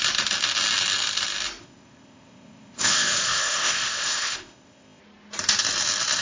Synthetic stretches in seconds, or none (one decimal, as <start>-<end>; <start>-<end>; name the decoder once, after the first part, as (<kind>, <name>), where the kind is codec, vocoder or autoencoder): 1.6-5.0 (codec, ZipCodec)